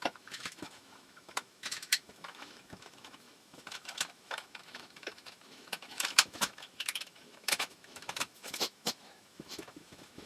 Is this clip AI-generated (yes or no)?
yes